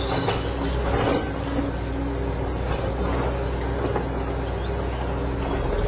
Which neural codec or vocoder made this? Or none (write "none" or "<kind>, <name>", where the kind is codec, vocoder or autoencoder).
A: none